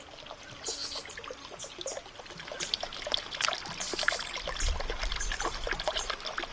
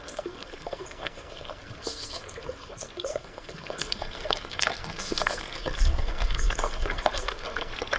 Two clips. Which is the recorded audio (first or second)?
first